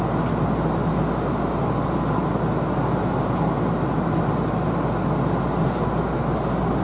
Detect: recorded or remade recorded